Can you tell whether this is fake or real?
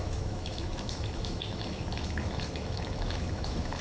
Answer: fake